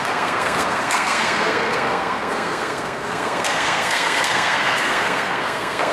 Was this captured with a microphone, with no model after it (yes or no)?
no